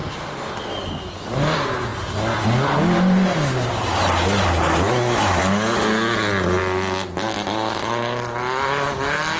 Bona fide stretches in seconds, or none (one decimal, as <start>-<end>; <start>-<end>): 0.0-9.4